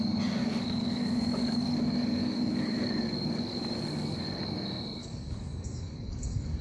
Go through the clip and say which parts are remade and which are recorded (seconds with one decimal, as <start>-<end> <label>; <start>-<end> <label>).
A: 0.0-0.4 recorded; 0.4-4.4 remade; 4.4-5.0 recorded; 5.0-6.6 remade